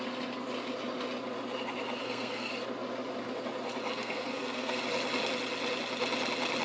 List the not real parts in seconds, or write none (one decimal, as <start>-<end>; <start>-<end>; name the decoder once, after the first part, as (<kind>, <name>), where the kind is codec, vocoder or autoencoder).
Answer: 2.0-2.5 (codec, SNAC); 3.9-4.8